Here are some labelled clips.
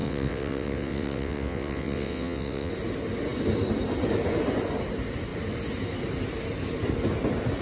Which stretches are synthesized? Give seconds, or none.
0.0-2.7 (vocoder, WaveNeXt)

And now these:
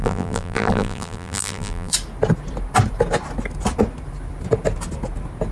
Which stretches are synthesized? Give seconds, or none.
0.0-1.9 (vocoder, BigVGAN v2)

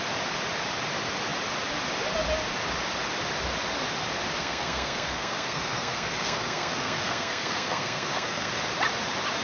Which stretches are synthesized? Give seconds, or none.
4.4-8.5 (codec, SNAC)

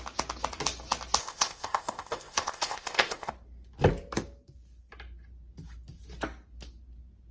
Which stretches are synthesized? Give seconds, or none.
1.2-3.3 (codec, ZipCodec)

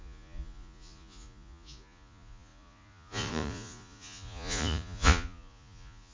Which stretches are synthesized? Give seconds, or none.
0.0-6.1 (vocoder, Vocos)

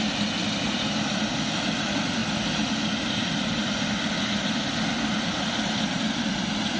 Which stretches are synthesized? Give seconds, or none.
0.0-6.8 (vocoder, BigVGAN v2)

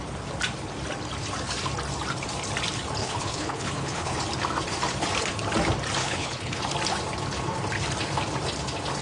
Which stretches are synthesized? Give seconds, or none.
3.0-4.2 (codec, HILCodec); 6.0-6.6